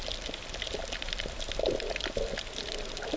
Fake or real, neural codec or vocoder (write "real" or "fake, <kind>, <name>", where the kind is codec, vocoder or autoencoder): real